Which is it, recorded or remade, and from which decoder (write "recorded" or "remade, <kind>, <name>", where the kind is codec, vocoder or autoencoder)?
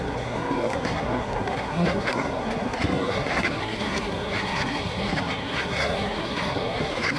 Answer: remade, codec, SNAC